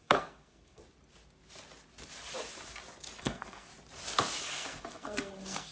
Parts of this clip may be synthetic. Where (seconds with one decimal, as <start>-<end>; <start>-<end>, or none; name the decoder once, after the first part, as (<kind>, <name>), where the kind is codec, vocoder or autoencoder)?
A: 0.0-0.8 (codec, SNAC); 3.2-3.7; 4.4-5.7